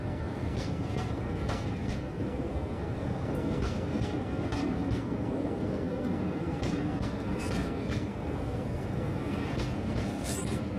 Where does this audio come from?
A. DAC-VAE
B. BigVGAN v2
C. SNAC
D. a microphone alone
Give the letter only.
C